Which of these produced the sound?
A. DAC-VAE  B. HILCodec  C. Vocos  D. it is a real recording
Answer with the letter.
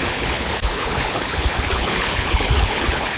B